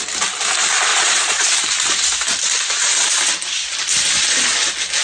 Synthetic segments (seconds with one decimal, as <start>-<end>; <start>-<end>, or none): 0.9-1.6